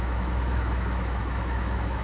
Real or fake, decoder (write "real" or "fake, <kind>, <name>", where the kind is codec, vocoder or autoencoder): fake, autoencoder, DAC-VAE